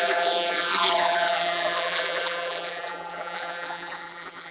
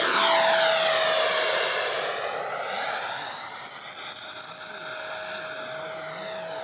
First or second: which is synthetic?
first